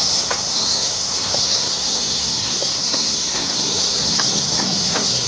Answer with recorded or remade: remade